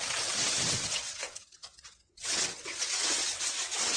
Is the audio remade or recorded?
remade